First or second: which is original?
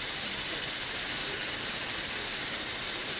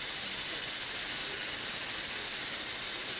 second